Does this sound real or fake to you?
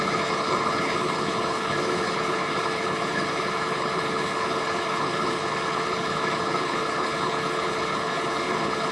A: fake